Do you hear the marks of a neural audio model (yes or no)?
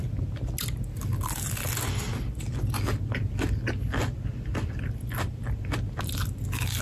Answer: no